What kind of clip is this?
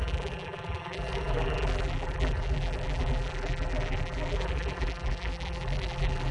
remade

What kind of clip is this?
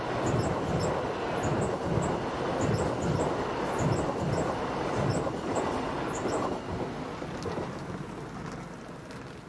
recorded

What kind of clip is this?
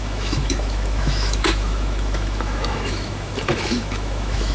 remade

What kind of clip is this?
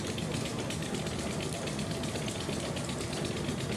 recorded